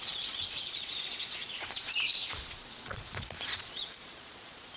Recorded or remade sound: remade